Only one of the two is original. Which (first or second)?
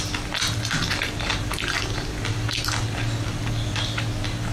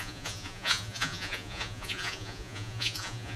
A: first